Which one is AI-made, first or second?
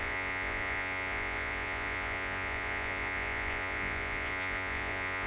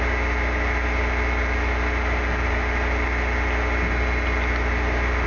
first